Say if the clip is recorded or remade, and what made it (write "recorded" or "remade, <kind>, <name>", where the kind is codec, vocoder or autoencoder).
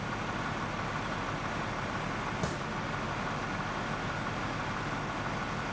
recorded